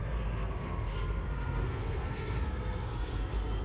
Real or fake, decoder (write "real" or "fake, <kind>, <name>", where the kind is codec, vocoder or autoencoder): fake, codec, SNAC